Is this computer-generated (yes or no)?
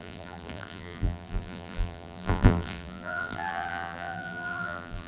yes